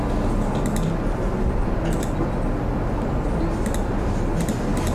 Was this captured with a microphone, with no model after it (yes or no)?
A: yes